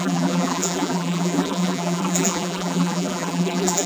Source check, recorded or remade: remade